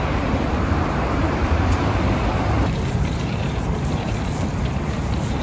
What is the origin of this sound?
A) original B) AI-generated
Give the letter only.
B